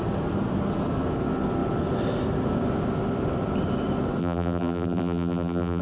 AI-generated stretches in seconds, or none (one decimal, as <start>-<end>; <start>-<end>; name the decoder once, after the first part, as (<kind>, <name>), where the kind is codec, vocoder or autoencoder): 4.2-5.8 (vocoder, BigVGAN v2)